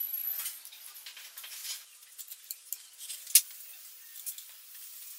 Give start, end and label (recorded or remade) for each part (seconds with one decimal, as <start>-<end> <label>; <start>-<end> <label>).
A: 0.0-5.2 recorded